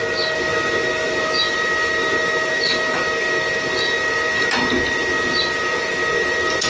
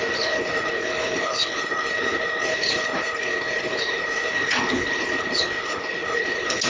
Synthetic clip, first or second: second